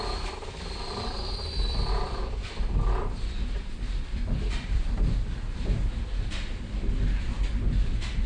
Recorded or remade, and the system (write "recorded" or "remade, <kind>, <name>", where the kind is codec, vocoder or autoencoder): remade, vocoder, BigVGAN v2